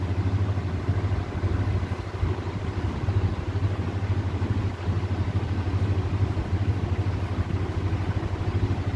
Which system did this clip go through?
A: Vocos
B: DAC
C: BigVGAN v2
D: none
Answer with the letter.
D